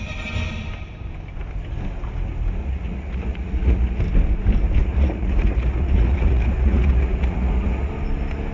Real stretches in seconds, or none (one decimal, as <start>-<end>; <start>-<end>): 0.0-2.6; 4.0-4.8; 7.9-8.5